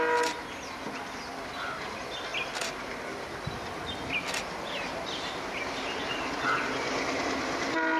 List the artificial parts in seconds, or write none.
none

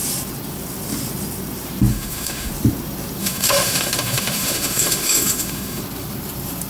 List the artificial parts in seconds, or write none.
1.9-2.5; 3.2-5.8

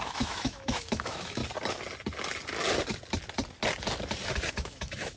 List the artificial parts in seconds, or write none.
0.0-1.4; 4.5-5.2

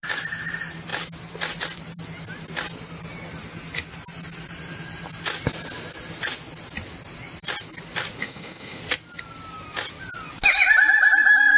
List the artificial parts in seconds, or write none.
8.2-8.8